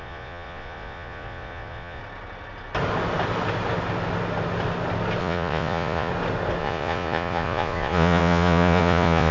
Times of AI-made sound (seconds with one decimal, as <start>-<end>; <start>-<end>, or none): 0.0-2.0; 5.2-6.1; 6.6-9.3